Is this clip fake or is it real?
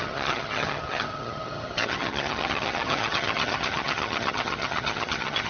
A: fake